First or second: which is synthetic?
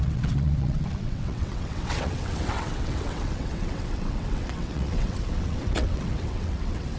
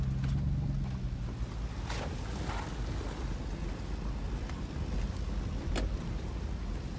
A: first